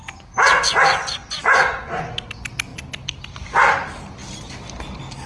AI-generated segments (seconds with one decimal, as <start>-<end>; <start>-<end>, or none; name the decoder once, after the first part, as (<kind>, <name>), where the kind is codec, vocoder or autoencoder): 1.2-2.0 (vocoder, Vocos)